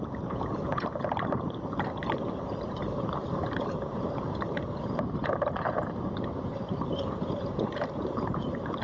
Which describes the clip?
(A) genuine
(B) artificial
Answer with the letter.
B